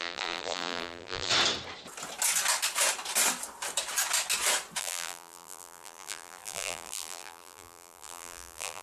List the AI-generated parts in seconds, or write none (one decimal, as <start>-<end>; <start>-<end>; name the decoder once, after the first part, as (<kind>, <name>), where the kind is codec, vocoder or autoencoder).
0.0-1.3 (vocoder, BigVGAN v2); 4.8-8.8